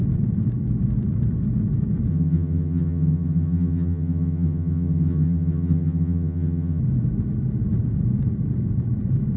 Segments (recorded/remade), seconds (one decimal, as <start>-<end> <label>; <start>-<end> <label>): 0.0-2.1 recorded; 2.1-6.8 remade; 6.8-9.4 recorded